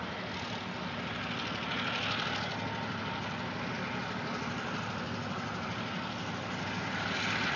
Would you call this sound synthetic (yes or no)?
no